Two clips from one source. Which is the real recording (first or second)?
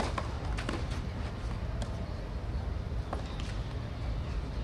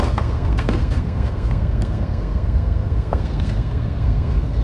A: first